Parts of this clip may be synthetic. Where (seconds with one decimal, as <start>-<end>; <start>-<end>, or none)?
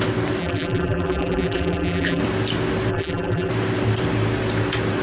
0.4-2.2; 2.9-3.5